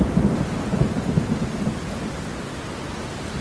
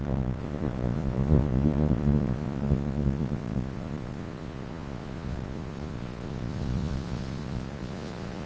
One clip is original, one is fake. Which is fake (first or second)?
second